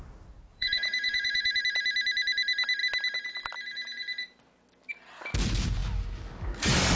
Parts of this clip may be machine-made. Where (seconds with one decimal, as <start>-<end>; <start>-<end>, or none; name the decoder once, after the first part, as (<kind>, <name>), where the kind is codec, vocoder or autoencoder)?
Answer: 0.5-1.6 (vocoder, Vocos)